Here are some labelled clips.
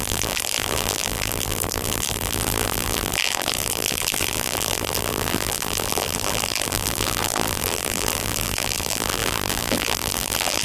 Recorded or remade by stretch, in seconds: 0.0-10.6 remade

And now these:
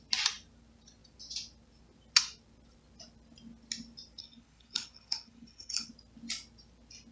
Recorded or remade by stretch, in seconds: 0.0-4.2 recorded; 4.2-5.9 remade; 5.9-7.1 recorded

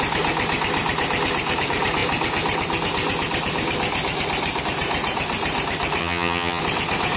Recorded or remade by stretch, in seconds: 0.0-6.0 recorded; 6.0-6.6 remade; 6.6-7.2 recorded

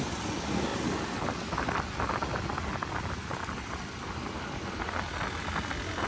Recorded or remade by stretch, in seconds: 0.0-6.1 recorded

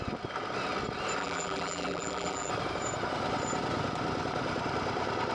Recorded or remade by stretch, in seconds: 0.0-1.2 recorded; 1.2-2.5 remade; 2.5-5.3 recorded

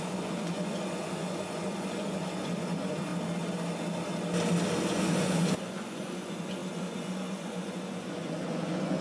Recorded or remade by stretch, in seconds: 0.0-3.1 remade; 3.1-4.9 recorded; 4.9-9.0 remade